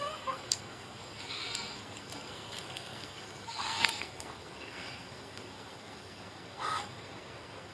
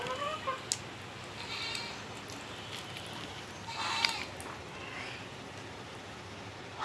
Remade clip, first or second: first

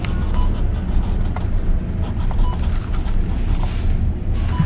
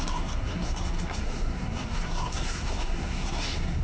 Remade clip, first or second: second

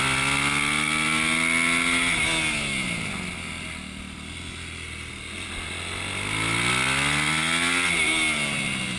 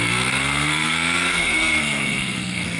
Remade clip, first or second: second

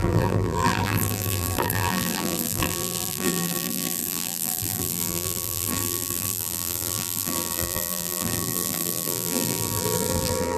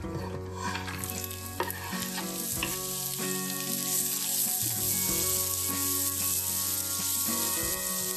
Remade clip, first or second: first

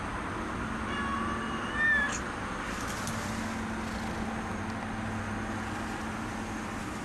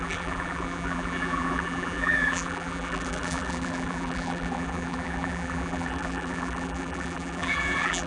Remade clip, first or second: second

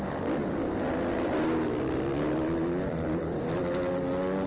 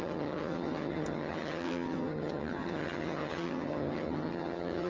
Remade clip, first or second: second